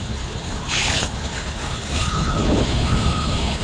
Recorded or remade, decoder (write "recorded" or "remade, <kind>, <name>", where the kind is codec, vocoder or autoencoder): remade, codec, HILCodec